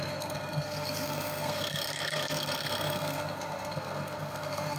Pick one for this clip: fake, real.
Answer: fake